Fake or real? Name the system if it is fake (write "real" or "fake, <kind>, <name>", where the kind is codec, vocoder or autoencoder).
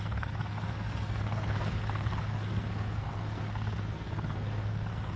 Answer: fake, codec, SNAC